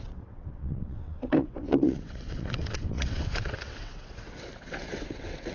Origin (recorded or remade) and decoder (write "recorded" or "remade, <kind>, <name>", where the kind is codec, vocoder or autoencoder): remade, vocoder, WaveNeXt